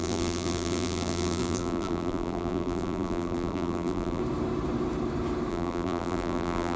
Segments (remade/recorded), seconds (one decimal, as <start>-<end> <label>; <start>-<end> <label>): 0.0-4.2 remade; 4.2-5.5 recorded; 5.5-6.8 remade